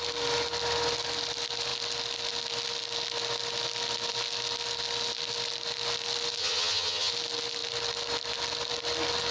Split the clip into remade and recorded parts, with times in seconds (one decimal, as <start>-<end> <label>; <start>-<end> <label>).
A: 0.0-6.4 recorded; 6.4-7.1 remade; 7.1-9.3 recorded

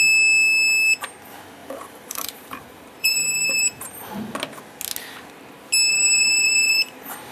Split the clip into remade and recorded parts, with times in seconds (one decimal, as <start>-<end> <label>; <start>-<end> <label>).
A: 0.0-1.6 recorded; 1.6-4.2 remade; 4.2-5.9 recorded; 5.9-7.3 remade

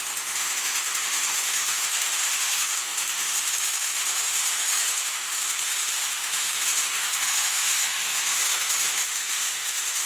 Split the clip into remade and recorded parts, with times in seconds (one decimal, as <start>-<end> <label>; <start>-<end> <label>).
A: 0.0-10.1 remade

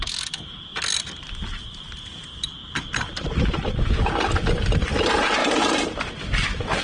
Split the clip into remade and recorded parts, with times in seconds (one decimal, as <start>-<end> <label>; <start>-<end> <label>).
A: 0.0-2.6 recorded; 2.6-3.3 remade; 3.3-5.4 recorded; 5.4-6.1 remade; 6.1-6.8 recorded

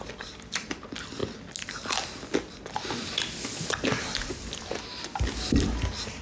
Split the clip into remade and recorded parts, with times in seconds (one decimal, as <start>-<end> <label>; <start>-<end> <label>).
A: 0.0-6.2 recorded

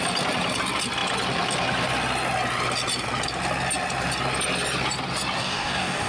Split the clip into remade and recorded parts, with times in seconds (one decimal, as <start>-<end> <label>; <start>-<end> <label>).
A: 0.0-5.4 recorded; 5.4-6.1 remade